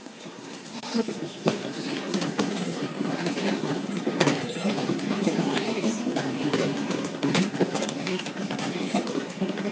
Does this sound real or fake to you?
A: fake